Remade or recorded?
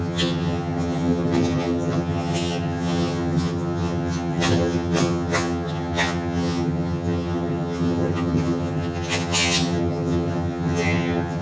remade